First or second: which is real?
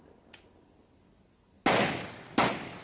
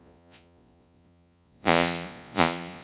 first